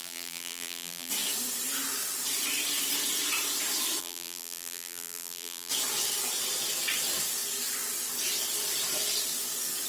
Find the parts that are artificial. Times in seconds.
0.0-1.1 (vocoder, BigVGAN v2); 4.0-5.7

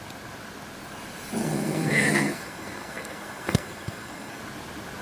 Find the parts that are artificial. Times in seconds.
1.4-4.4 (codec, SNAC)

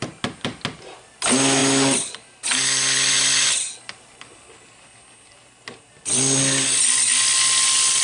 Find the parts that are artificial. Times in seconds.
none

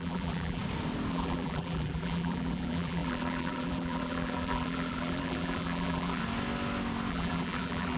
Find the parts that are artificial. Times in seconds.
0.0-0.6 (vocoder, BigVGAN v2); 1.1-6.2; 7.1-8.0

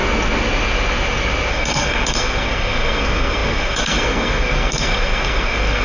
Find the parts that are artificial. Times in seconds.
1.5-5.8 (codec, SNAC)

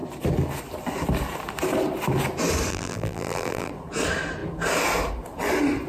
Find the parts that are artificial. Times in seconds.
2.7-3.7 (vocoder, BigVGAN v2)